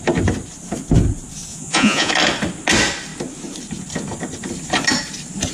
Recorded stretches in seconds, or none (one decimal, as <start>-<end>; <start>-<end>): 0.0-1.5; 2.1-5.5